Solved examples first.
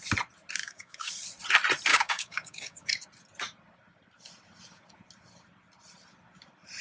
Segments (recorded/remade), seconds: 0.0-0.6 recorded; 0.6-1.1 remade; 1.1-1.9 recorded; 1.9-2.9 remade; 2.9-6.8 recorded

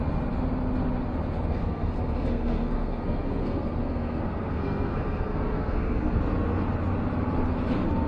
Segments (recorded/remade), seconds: 0.0-1.5 recorded; 1.5-6.2 remade; 6.2-8.1 recorded

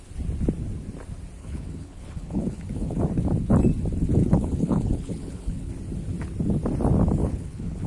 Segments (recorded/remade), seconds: 0.0-1.4 recorded; 1.4-3.0 remade; 3.0-4.2 recorded; 4.2-5.7 remade; 5.7-7.2 recorded; 7.2-7.9 remade